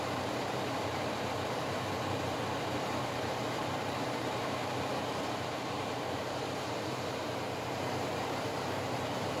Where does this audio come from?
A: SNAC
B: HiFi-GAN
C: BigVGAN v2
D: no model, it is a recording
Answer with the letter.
C